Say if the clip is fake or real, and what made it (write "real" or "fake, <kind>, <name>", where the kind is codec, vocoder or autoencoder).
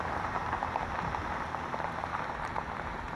fake, vocoder, BigVGAN v2